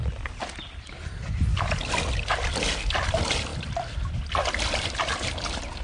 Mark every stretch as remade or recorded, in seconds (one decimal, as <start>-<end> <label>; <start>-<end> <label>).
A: 0.0-5.8 recorded